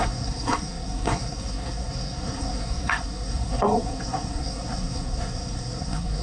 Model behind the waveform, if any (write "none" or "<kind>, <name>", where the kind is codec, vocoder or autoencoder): codec, SNAC